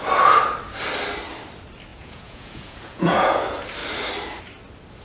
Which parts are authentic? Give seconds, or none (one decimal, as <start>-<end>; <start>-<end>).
0.0-1.9; 3.4-5.0

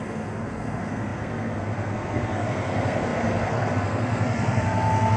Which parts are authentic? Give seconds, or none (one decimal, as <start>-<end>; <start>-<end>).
none

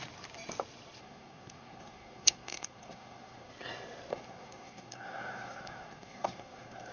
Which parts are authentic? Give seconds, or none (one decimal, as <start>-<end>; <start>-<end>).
0.0-1.0; 3.5-4.1

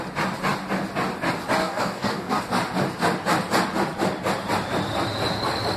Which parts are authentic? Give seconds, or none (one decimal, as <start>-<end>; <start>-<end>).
0.0-1.6; 2.4-5.8

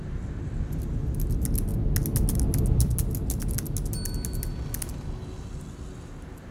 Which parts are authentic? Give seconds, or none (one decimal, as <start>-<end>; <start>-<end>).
0.0-6.5